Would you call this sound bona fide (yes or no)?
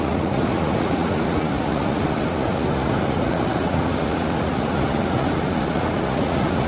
no